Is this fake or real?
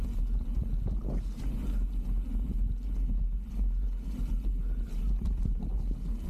real